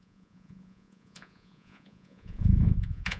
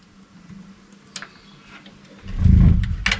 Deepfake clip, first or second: first